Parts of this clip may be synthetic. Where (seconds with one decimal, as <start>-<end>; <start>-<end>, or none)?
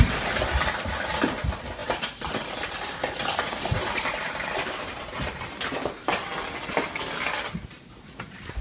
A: 0.0-6.3; 7.6-8.6